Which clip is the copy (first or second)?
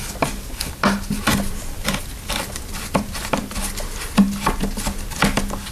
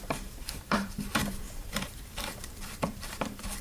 second